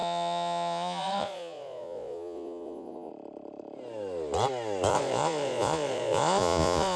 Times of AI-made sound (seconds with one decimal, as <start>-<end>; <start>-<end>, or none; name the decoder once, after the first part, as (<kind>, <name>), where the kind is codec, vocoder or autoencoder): 0.0-3.1 (vocoder, Vocos); 4.9-7.0